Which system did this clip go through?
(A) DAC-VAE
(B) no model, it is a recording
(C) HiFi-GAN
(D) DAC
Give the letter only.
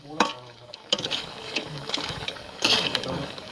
D